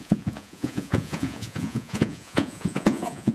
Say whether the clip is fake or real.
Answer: fake